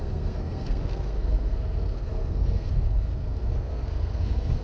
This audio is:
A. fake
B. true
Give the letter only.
A